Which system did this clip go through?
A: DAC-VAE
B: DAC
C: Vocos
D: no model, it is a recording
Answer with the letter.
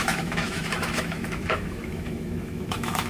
A